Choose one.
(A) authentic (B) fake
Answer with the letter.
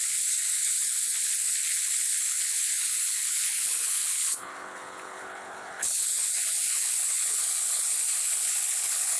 B